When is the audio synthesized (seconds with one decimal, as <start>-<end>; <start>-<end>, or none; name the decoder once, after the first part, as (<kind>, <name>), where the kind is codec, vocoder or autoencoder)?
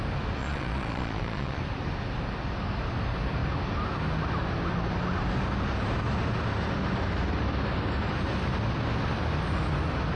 0.4-1.6 (vocoder, Vocos)